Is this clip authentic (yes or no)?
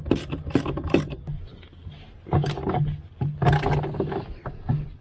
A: yes